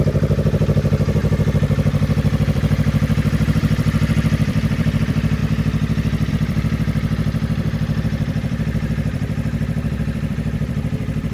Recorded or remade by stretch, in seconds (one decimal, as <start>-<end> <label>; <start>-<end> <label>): 0.0-5.4 remade; 5.4-6.3 recorded; 6.3-11.3 remade